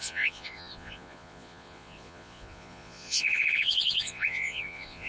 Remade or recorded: remade